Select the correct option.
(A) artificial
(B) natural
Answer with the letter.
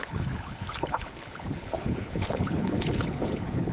A